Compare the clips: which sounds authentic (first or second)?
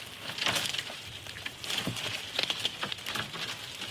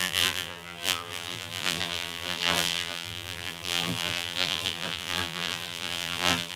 first